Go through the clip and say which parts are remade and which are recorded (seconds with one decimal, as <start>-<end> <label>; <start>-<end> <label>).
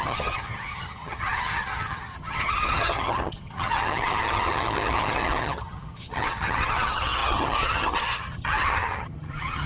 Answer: 0.0-9.7 remade